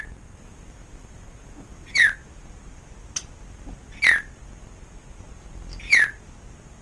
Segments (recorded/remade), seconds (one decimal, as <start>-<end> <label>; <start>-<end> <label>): 0.0-6.8 recorded